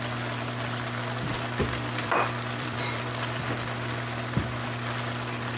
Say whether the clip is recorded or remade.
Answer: remade